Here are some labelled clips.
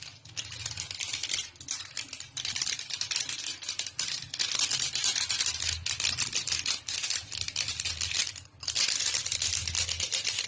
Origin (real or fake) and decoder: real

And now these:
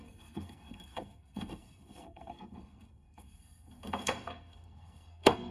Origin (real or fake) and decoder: fake, codec, SNAC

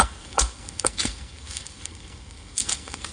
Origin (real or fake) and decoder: fake, codec, SNAC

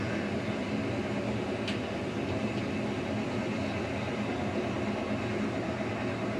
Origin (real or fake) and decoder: real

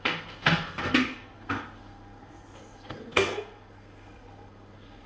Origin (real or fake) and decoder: fake, codec, SNAC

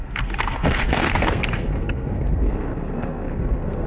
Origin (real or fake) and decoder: fake, codec, SNAC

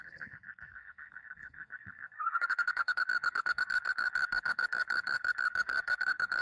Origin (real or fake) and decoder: fake, codec, SNAC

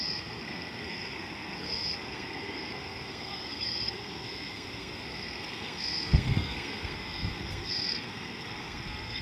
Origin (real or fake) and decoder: fake, codec, SNAC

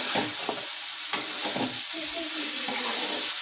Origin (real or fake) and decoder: real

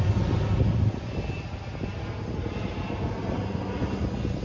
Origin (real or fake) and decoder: real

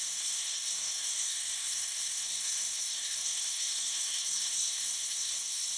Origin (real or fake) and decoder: fake, codec, SNAC